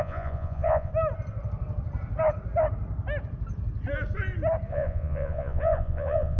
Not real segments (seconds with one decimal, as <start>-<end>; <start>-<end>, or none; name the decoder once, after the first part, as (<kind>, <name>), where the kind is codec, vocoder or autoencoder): 0.0-0.9 (vocoder, Vocos); 4.7-6.4